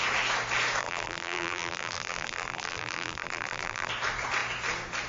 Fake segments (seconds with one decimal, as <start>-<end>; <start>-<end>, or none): 0.8-3.9